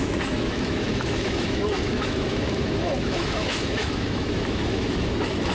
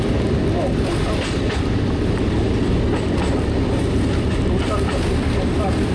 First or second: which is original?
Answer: second